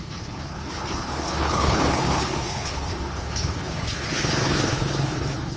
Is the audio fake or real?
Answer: fake